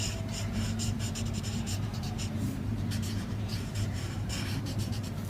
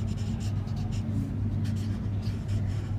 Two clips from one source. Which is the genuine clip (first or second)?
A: second